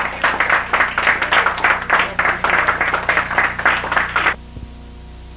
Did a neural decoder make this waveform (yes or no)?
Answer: no